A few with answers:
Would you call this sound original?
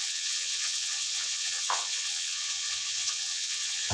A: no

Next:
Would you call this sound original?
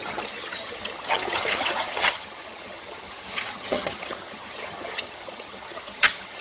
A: no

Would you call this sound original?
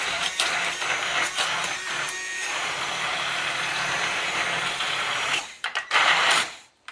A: no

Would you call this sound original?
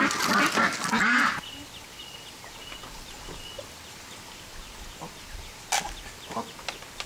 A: yes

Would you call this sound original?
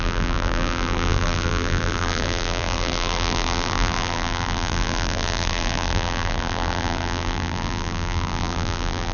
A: no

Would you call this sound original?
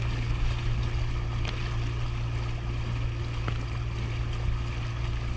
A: yes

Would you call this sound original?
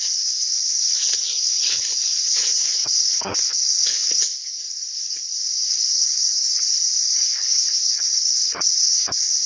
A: no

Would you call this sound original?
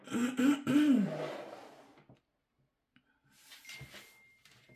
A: yes